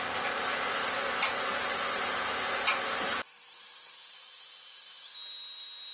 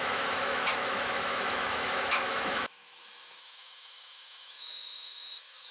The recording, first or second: first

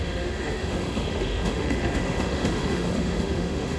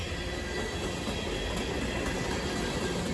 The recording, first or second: second